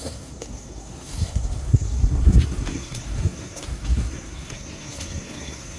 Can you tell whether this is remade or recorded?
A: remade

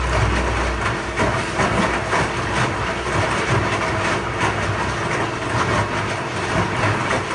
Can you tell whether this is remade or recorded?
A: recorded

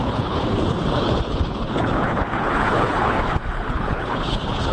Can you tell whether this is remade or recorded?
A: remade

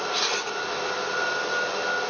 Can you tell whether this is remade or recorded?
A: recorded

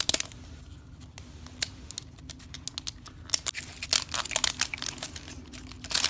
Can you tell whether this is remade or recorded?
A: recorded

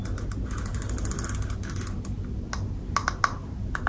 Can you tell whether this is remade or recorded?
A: recorded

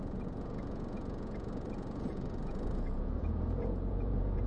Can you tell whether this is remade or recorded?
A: remade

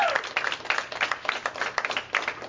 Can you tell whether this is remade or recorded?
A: recorded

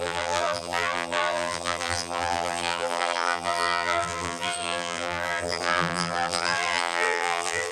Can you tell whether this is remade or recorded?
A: remade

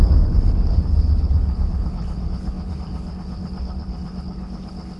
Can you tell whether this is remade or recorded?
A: remade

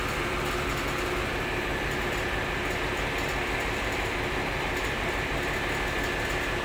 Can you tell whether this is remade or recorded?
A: recorded